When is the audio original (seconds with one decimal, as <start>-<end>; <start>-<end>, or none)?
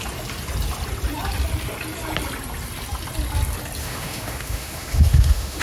0.0-3.8